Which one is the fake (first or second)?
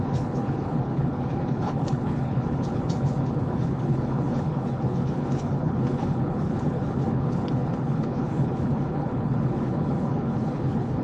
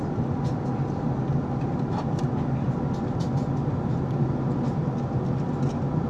first